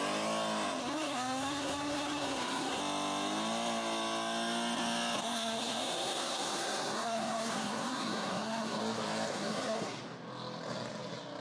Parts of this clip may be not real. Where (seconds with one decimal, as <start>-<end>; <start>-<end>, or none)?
0.8-2.8; 5.2-8.8; 9.3-10.0

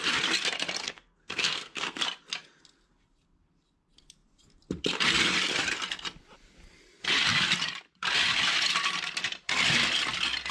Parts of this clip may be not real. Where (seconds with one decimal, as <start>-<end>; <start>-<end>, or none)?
0.8-2.0

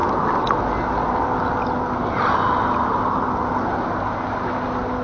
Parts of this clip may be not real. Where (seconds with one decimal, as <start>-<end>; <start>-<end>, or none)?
none

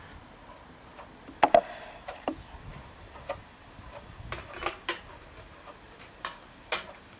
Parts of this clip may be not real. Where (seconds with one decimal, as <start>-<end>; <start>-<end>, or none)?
none

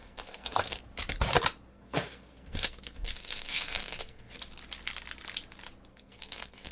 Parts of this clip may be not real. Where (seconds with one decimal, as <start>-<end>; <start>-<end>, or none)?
0.0-0.8; 1.7-4.4; 5.9-6.7

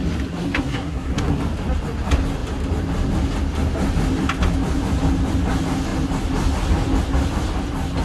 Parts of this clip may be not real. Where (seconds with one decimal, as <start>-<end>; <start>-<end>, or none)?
0.4-1.4

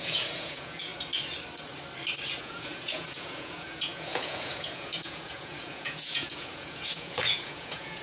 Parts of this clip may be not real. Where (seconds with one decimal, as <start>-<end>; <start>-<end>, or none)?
0.0-0.9; 2.4-8.0

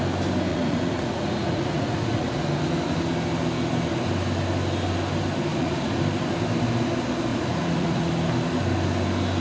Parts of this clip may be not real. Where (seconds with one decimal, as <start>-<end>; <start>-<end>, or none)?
0.5-2.3; 5.5-6.0; 7.3-8.1